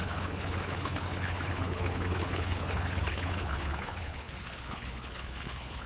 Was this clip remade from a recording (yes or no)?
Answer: yes